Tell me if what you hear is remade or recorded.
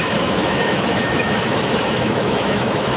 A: remade